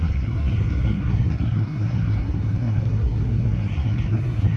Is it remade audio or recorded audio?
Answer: remade